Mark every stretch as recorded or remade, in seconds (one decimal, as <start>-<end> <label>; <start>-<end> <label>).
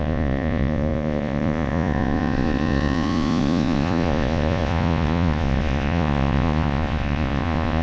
0.0-7.8 remade